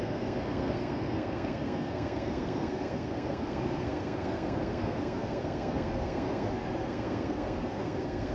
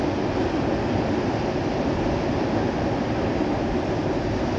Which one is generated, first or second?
first